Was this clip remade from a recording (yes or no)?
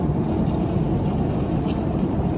no